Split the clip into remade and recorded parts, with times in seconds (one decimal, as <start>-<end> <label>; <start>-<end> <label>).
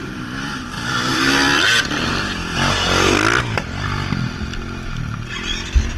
0.0-6.0 remade